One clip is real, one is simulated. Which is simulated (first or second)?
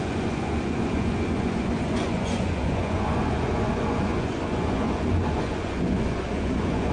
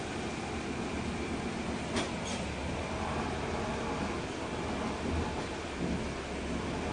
first